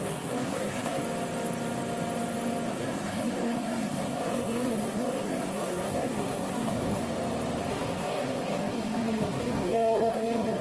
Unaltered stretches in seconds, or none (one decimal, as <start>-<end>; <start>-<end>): 1.0-2.7; 7.0-7.7